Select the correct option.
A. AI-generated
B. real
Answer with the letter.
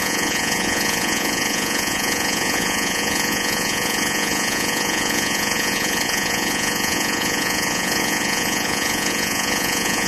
A